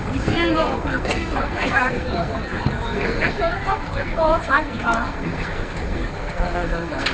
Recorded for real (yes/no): no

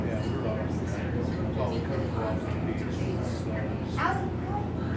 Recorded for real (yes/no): yes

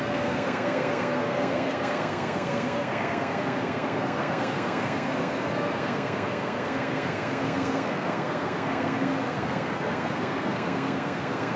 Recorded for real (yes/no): no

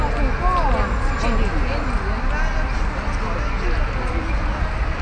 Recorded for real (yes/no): yes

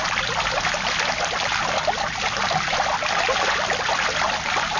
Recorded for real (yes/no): yes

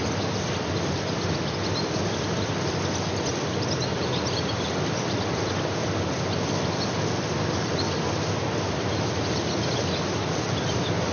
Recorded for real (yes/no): yes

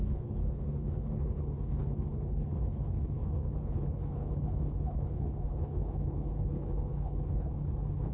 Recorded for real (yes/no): no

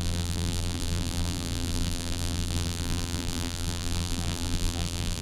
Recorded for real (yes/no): no